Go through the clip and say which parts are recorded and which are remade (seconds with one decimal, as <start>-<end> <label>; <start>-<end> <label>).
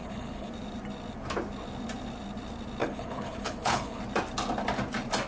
0.0-0.5 remade; 0.5-2.8 recorded; 2.8-4.0 remade; 4.0-5.3 recorded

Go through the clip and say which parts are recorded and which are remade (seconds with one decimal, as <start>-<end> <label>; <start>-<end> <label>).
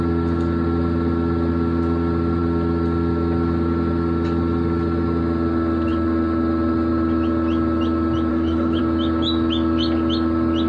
0.0-8.3 recorded; 8.3-8.8 remade; 8.8-10.7 recorded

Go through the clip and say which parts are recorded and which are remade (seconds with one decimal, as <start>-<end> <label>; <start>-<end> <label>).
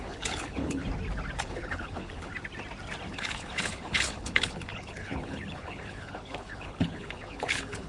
0.0-0.8 remade; 0.8-1.4 recorded; 1.4-2.3 remade; 2.3-3.1 recorded; 3.1-7.9 remade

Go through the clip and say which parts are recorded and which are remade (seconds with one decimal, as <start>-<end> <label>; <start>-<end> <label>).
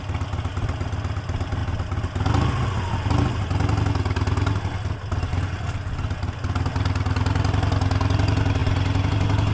0.0-9.5 recorded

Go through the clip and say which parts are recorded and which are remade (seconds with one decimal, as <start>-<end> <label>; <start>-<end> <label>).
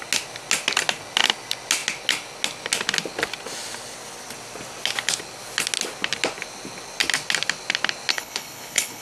0.0-8.1 recorded; 8.1-9.0 remade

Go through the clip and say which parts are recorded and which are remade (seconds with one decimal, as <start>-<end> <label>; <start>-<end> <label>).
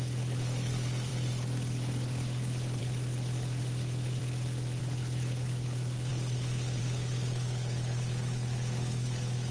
0.0-4.2 remade; 4.2-4.8 recorded; 4.8-9.5 remade